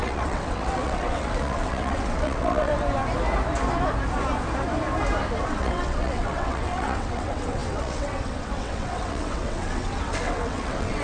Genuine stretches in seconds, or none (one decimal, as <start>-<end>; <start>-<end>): 2.7-5.4